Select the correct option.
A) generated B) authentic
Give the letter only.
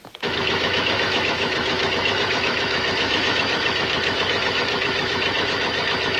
A